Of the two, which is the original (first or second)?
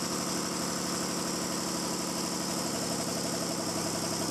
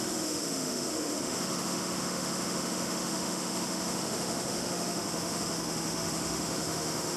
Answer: first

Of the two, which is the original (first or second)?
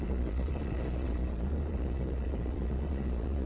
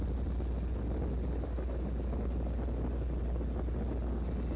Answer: second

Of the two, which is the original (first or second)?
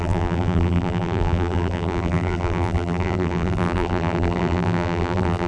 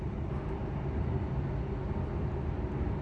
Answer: second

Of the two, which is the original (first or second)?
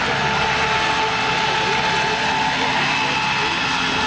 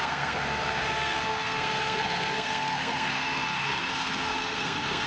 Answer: first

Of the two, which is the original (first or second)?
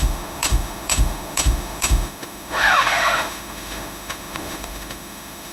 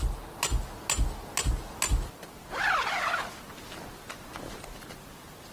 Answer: second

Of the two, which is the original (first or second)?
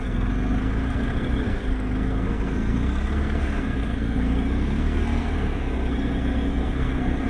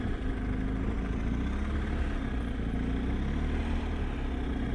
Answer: second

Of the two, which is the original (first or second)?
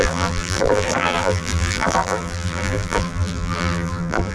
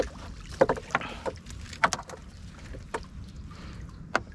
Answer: second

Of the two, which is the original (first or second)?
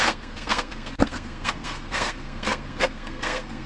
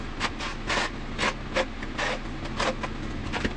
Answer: second